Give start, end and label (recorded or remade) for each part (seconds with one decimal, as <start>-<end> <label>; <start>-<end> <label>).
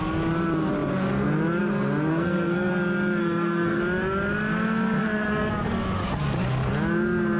0.0-2.1 recorded; 2.1-2.7 remade; 2.7-3.2 recorded; 3.2-3.8 remade; 3.8-5.0 recorded; 5.0-5.5 remade; 5.5-7.4 recorded